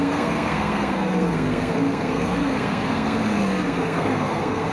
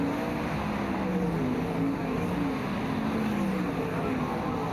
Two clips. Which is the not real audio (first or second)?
first